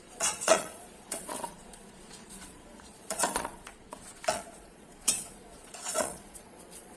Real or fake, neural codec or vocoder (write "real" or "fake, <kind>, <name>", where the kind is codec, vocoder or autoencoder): fake, vocoder, Vocos